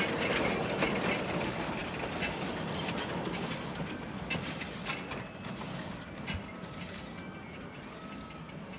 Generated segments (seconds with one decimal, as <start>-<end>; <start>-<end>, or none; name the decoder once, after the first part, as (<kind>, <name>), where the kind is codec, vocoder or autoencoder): none